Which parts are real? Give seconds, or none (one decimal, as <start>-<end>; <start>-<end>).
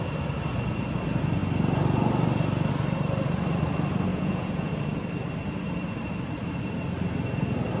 0.0-4.1; 4.7-7.8